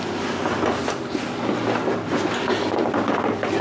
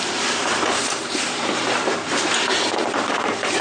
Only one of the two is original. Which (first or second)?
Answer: first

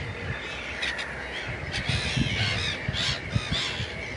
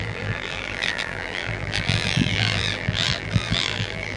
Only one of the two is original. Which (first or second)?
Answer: first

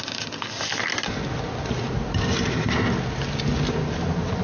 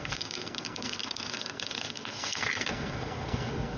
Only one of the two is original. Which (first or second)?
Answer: first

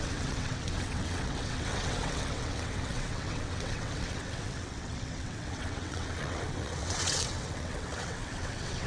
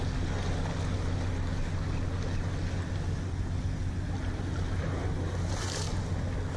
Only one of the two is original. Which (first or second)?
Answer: second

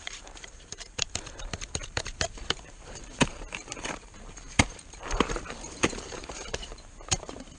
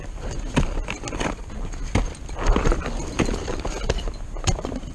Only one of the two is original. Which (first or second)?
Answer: second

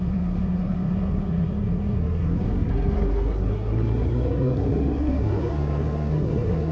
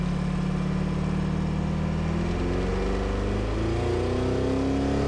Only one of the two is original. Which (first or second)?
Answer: second